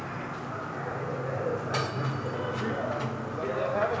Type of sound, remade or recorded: recorded